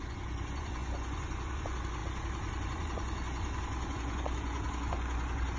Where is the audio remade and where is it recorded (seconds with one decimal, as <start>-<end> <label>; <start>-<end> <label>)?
0.0-5.6 remade